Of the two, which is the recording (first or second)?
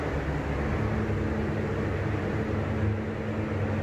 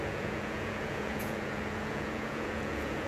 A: first